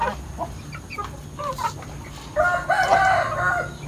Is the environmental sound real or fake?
real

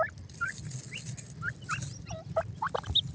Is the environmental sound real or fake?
real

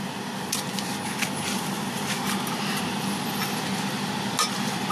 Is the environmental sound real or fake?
real